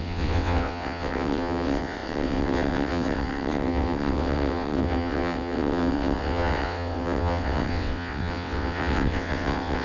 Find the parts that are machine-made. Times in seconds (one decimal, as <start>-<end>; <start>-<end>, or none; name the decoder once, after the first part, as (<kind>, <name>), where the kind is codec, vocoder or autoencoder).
0.0-9.8 (vocoder, WaveNeXt)